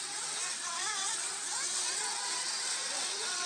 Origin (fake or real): fake